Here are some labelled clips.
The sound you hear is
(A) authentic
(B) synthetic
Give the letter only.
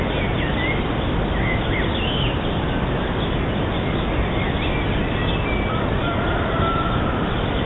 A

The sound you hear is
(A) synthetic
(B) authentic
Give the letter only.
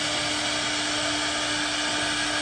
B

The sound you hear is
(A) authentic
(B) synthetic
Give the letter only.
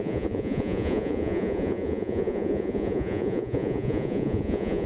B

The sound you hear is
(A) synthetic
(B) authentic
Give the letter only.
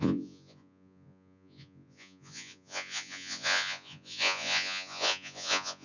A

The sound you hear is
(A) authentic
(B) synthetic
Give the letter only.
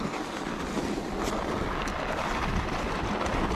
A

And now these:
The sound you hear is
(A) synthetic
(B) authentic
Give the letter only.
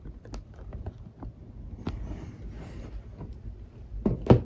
B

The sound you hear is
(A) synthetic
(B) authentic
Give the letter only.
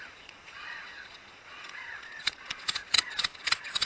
A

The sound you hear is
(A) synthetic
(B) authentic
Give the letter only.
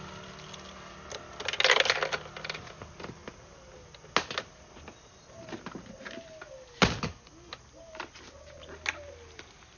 B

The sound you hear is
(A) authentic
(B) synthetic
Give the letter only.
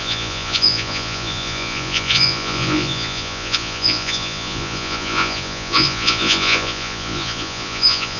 B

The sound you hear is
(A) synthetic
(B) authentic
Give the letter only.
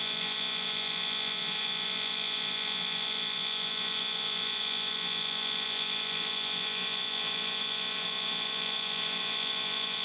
A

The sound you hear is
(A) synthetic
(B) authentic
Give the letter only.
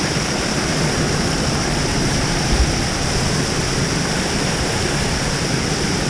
B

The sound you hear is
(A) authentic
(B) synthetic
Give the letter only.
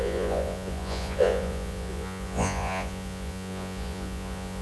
B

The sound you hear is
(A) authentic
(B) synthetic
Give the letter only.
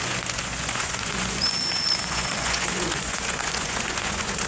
B